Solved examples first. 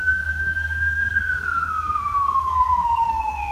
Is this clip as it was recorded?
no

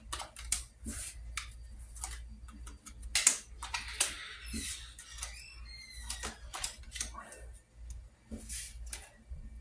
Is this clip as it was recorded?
yes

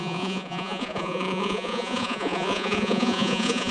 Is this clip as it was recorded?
no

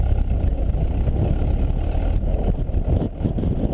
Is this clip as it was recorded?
yes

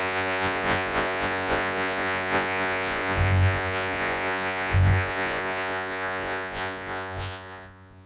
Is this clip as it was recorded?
no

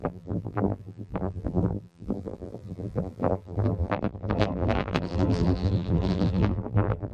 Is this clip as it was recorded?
no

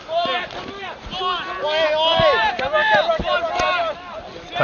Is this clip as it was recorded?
yes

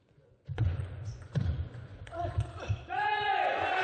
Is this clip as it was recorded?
no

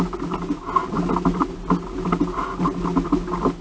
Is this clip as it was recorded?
yes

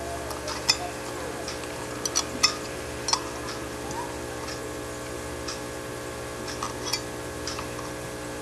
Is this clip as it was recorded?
yes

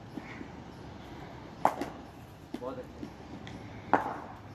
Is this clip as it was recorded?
yes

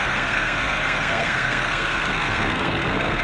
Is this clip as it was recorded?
no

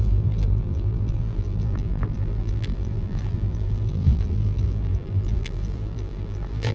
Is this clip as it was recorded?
no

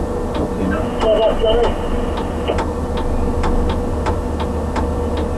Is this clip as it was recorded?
yes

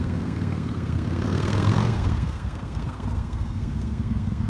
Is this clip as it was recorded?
no